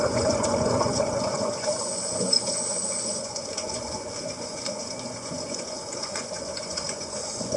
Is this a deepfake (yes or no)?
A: yes